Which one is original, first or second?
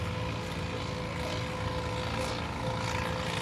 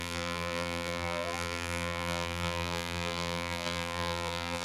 first